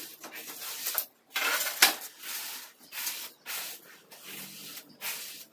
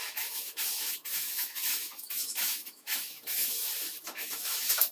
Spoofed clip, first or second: second